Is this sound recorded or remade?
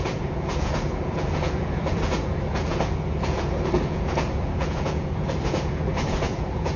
remade